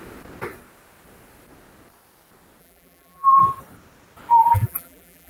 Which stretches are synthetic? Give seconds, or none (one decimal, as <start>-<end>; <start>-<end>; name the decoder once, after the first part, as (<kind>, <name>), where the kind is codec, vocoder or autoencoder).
2.6-3.4 (vocoder, BigVGAN v2); 4.4-5.3